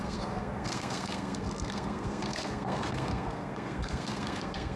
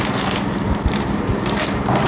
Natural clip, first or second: second